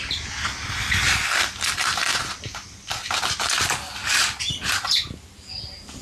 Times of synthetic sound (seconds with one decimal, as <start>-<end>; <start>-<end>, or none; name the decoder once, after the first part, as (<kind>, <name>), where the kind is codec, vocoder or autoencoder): none